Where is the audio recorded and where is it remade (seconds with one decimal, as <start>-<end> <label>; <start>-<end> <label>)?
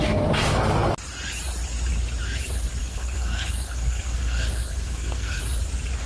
0.0-2.8 recorded; 2.8-5.4 remade; 5.4-6.1 recorded